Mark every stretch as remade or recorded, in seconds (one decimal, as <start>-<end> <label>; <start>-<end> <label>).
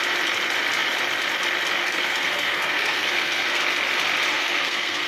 0.0-1.8 recorded; 1.8-3.6 remade; 3.6-4.3 recorded; 4.3-5.1 remade